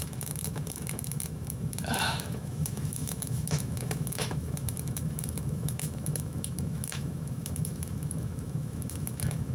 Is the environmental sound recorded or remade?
remade